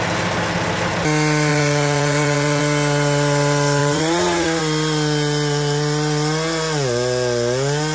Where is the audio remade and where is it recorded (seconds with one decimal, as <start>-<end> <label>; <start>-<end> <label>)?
0.0-1.5 recorded; 1.5-2.6 remade; 2.6-3.8 recorded; 3.8-4.6 remade; 4.6-7.9 recorded